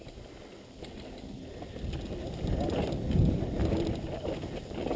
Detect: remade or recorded recorded